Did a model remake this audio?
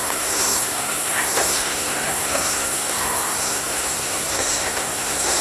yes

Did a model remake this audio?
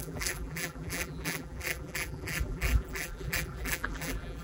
yes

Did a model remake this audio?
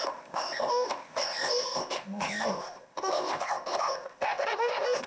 yes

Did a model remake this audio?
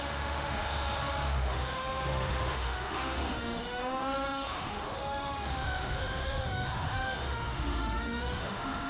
yes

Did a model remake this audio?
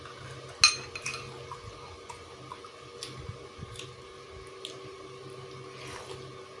no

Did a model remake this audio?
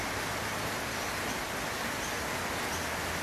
no